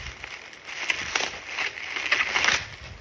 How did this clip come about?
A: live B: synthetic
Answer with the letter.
A